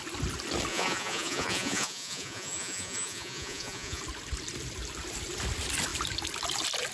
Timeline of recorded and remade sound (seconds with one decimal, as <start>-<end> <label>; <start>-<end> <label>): 0.0-0.7 recorded; 0.7-4.0 remade; 4.0-6.9 recorded